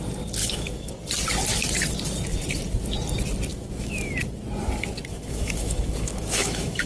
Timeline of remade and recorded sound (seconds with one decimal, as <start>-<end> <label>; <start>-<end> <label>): 0.0-0.4 recorded; 0.4-0.9 remade; 0.9-3.5 recorded; 3.5-4.1 remade; 4.1-5.1 recorded; 5.1-6.9 remade